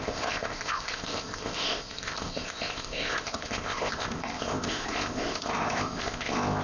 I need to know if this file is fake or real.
fake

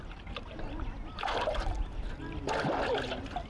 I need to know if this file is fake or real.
real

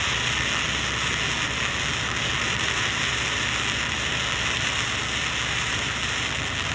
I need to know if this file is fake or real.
real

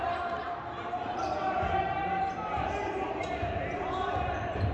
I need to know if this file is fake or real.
fake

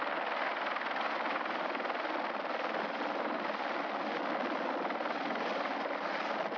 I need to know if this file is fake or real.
real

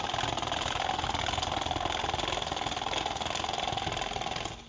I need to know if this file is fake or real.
real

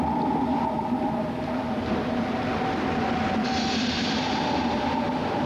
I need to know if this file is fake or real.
real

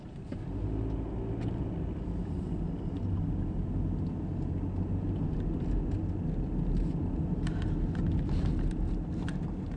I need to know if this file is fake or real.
real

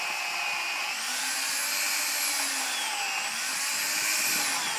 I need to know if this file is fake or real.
real